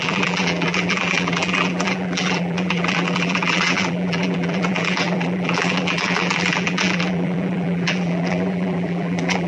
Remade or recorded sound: remade